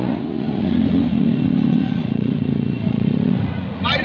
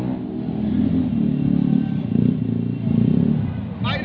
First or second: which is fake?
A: first